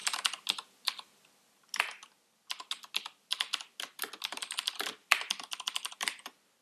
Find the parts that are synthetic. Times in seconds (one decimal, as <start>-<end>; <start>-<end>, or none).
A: 5.0-6.6